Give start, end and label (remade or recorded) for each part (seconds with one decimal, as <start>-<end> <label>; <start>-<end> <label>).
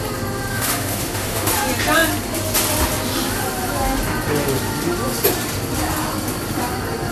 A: 0.0-0.5 recorded; 0.5-1.5 remade; 1.5-7.1 recorded